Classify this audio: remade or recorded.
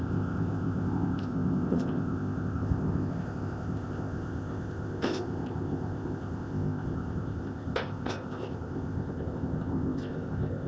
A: remade